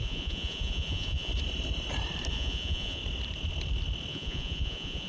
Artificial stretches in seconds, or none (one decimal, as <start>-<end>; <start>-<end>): 0.0-1.3; 2.3-3.0; 4.1-5.1

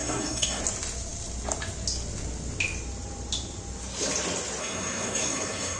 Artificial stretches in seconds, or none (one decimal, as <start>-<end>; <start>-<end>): 0.0-0.6; 4.6-5.8

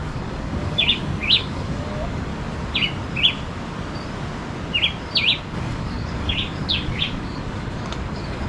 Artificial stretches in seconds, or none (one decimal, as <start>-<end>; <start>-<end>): 0.0-2.3; 5.4-8.5

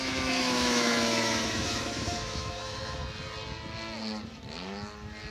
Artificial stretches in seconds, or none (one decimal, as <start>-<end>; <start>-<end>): 0.0-2.8

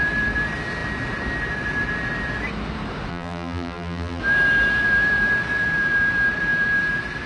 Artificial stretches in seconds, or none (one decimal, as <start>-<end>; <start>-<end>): 3.1-4.2